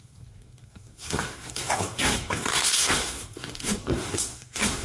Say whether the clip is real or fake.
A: fake